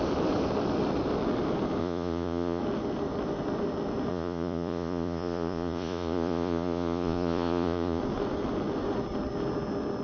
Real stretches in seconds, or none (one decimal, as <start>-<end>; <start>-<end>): 0.0-1.8; 2.6-4.1; 8.0-10.0